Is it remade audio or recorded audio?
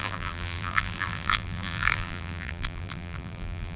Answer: remade